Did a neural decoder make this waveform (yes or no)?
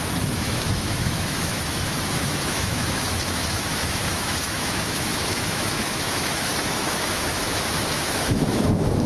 yes